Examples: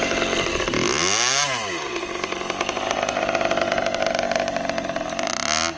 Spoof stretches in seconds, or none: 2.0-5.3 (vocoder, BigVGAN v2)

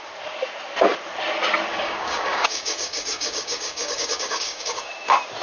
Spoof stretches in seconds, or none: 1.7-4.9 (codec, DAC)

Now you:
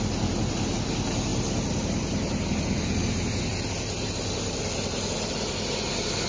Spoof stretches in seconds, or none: none

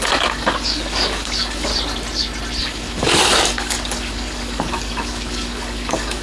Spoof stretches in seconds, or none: 0.0-1.7 (codec, DAC); 2.6-6.2